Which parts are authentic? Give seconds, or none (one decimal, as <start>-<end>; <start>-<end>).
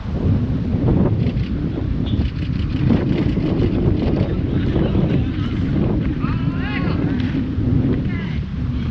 0.0-8.9